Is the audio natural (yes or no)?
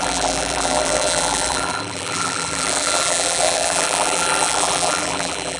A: no